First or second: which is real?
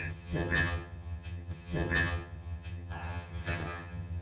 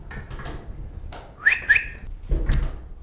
second